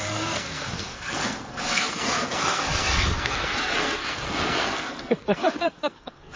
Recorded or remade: remade